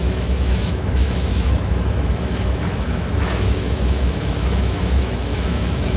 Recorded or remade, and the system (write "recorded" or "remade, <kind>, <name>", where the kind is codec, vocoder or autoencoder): remade, autoencoder, DAC-VAE